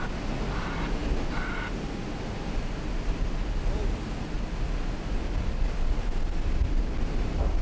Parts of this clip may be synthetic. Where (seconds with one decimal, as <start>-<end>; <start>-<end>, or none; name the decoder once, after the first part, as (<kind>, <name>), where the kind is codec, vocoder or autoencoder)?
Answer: none